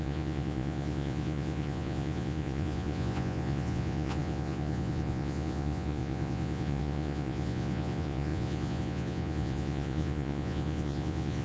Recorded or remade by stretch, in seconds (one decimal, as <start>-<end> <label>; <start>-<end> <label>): 0.0-11.4 remade